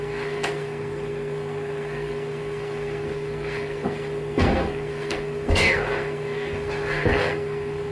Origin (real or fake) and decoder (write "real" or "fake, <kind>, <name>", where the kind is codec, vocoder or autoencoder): fake, codec, SNAC